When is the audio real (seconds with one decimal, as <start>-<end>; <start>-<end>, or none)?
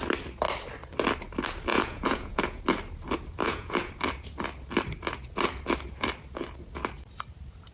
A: 0.0-1.7; 2.6-3.4; 3.9-7.7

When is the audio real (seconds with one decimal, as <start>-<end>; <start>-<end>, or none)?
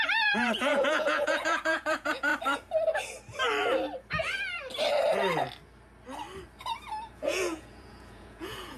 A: 2.3-7.1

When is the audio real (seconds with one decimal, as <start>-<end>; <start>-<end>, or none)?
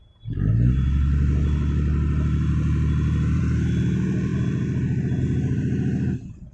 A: 0.0-6.5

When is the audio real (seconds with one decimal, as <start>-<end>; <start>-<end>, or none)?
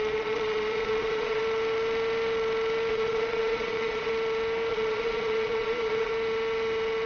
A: 1.4-2.9; 4.1-4.7; 6.1-7.1